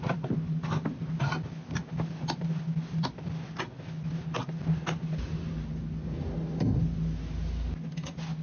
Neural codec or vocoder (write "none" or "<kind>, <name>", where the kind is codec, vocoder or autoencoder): none